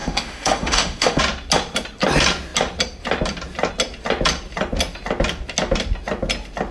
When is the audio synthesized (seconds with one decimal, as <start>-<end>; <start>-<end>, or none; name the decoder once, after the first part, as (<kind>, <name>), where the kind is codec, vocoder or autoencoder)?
0.0-1.2 (autoencoder, DAC-VAE)